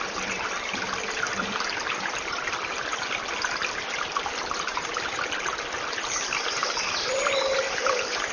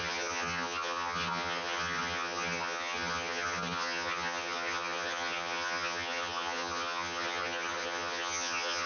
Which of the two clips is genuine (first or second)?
first